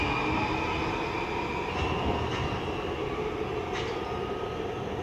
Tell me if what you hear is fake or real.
real